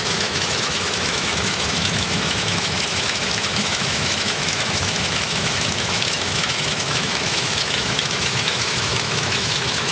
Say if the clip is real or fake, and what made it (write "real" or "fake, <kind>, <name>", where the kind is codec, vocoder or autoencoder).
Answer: fake, autoencoder, DAC-VAE